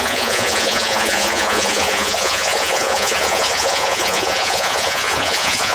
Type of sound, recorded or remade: remade